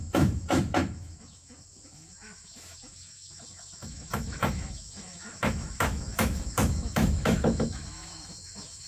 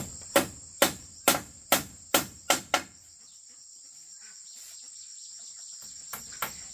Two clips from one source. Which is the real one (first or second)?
second